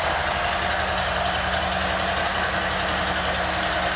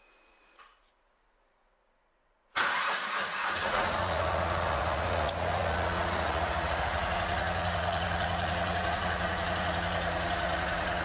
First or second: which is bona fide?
first